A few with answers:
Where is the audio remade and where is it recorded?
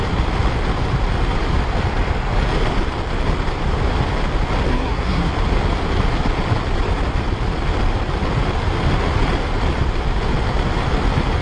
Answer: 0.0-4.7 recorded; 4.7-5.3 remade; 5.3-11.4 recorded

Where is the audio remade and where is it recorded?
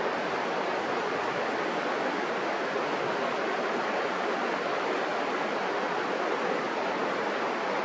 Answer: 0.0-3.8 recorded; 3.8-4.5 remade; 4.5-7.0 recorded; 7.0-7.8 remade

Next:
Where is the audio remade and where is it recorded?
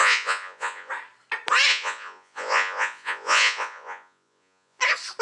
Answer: 0.0-0.9 remade; 0.9-1.7 recorded; 1.7-4.8 remade; 4.8-5.2 recorded